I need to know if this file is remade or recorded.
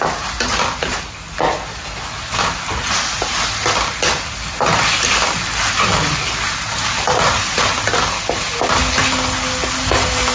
recorded